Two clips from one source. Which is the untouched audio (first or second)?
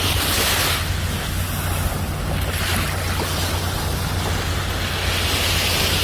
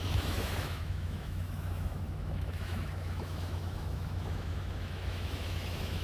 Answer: first